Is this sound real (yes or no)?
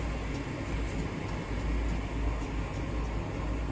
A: yes